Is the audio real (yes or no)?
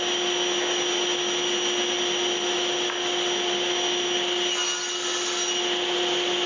yes